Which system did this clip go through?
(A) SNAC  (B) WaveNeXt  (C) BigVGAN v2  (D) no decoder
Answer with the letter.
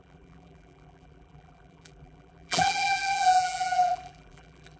C